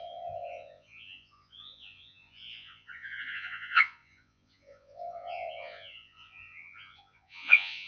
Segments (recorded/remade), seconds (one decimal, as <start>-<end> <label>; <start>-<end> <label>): 0.0-7.9 remade